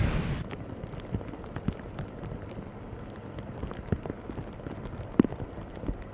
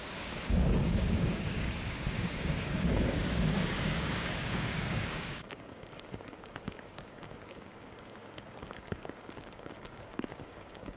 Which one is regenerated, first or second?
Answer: second